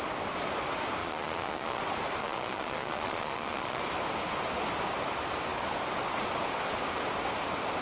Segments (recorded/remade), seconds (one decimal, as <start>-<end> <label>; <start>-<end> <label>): 0.0-1.0 recorded; 1.0-1.8 remade; 1.8-2.2 recorded; 2.2-3.8 remade; 3.8-7.8 recorded